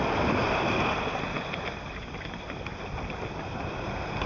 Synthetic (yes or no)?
no